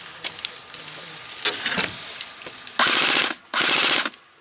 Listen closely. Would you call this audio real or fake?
real